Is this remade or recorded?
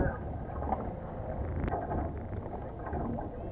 recorded